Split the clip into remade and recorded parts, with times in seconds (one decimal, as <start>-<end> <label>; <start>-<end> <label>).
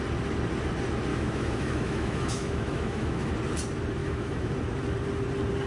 0.0-1.1 recorded; 1.1-3.3 remade; 3.3-4.0 recorded; 4.0-4.5 remade; 4.5-5.7 recorded